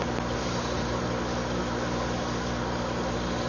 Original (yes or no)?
yes